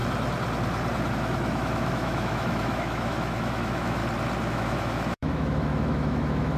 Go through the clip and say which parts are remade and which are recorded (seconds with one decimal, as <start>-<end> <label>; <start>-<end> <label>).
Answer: 0.0-1.1 recorded; 1.1-4.0 remade; 4.0-4.5 recorded; 4.5-6.6 remade